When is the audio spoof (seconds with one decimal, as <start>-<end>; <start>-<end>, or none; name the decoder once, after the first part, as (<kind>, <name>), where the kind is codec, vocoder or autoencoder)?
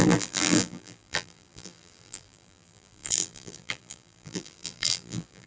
0.0-5.5 (vocoder, BigVGAN v2)